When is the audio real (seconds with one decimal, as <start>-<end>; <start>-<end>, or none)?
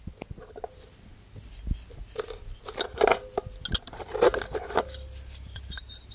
0.0-6.1